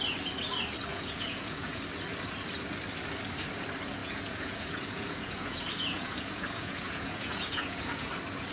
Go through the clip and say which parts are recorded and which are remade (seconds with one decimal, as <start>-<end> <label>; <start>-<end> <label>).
0.0-0.9 recorded; 0.9-1.8 remade; 1.8-4.0 recorded; 4.0-8.1 remade; 8.1-8.5 recorded